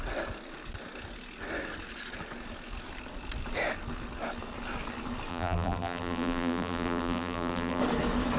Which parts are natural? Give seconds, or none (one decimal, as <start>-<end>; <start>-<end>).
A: 0.0-5.3; 7.8-8.4